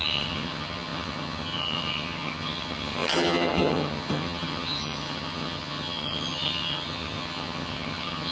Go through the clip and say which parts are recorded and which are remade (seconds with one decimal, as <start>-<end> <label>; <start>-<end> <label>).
0.0-8.3 remade